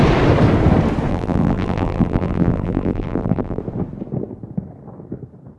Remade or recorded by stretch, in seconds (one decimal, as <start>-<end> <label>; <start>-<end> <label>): 0.0-1.1 recorded; 1.1-3.6 remade; 3.6-5.6 recorded